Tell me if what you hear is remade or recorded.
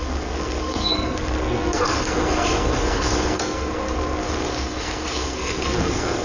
remade